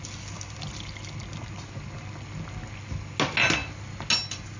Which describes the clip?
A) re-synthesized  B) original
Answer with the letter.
B